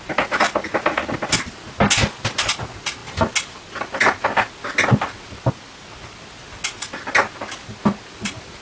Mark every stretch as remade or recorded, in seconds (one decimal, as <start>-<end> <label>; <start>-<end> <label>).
0.0-8.6 recorded